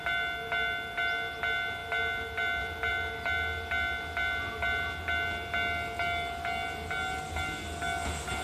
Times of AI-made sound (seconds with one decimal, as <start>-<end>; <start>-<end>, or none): none